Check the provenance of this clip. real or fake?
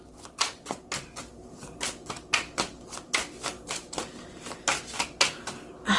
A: real